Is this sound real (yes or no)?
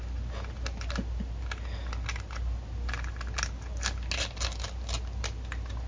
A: yes